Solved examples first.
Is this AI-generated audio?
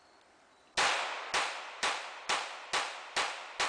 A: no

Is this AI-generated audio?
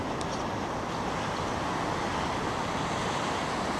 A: no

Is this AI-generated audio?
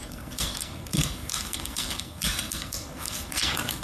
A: yes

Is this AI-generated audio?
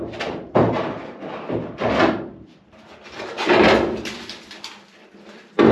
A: no